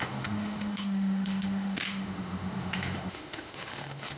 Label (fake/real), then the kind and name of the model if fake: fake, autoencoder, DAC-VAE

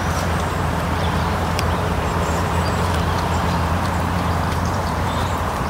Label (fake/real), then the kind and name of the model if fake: fake, vocoder, BigVGAN v2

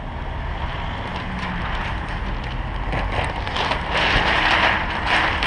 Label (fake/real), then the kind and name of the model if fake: real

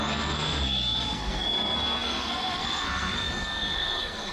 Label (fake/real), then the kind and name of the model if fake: fake, codec, SNAC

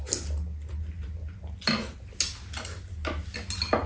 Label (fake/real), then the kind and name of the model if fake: real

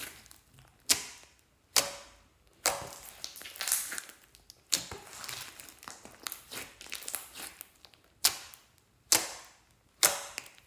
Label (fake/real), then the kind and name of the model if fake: real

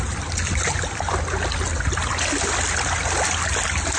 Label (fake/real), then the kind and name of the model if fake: real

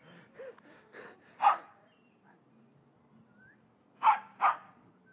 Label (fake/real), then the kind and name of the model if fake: real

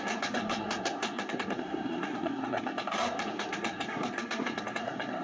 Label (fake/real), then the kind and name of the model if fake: fake, codec, SNAC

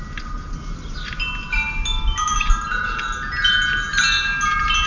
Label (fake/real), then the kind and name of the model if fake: real